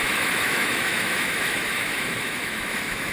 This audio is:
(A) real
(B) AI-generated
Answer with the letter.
B